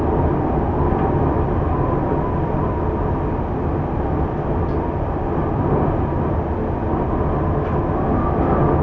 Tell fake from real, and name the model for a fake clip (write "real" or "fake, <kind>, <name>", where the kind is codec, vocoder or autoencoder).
real